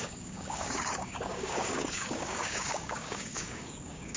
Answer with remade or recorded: remade